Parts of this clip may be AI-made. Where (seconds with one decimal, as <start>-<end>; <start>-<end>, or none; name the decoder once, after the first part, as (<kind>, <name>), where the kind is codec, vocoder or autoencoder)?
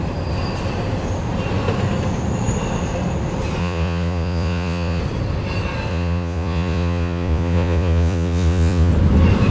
3.6-5.0 (vocoder, Vocos); 5.9-8.9